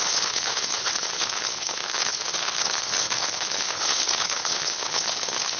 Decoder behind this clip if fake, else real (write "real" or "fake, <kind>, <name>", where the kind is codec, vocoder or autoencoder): fake, codec, HILCodec